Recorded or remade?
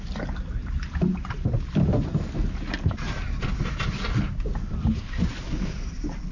recorded